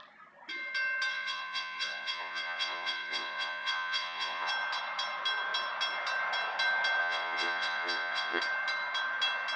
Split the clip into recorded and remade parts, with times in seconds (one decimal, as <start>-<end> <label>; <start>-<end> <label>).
0.0-1.1 recorded; 1.1-4.5 remade; 4.5-7.0 recorded; 7.0-8.4 remade; 8.4-9.6 recorded